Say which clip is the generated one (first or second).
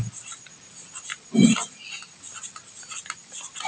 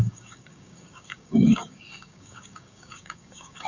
second